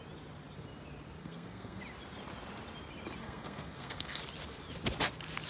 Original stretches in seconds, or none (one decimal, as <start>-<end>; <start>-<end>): 0.0-1.2; 1.8-3.2; 4.2-5.5